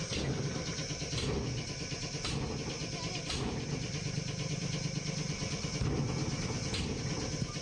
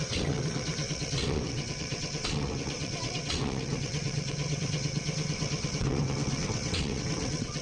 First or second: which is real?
first